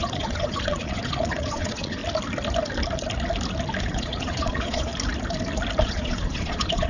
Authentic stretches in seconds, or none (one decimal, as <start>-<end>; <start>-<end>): 2.0-3.8; 4.9-5.8